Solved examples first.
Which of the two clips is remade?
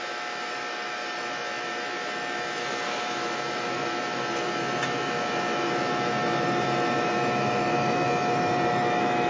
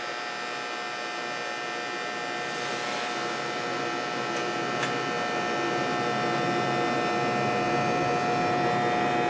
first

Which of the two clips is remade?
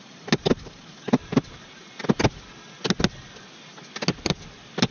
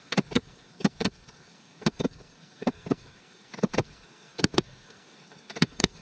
second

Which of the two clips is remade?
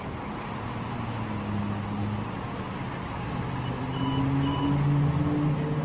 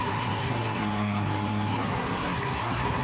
second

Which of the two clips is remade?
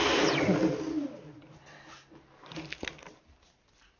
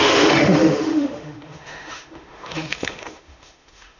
second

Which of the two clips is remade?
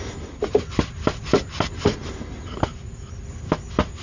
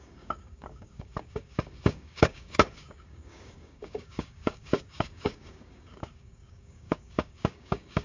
second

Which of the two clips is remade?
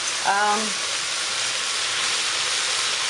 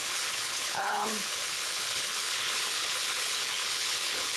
second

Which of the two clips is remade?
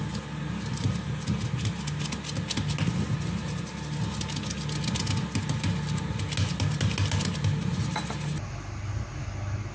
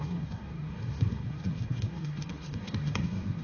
second